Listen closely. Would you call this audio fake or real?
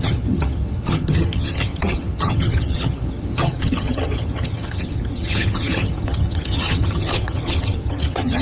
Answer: fake